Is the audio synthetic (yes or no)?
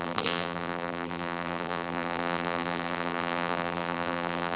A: yes